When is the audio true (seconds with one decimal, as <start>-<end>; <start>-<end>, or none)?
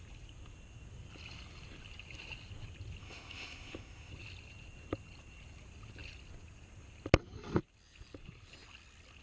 0.0-3.0; 4.1-9.2